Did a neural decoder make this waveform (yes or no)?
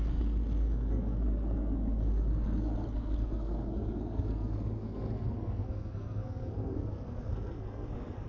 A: yes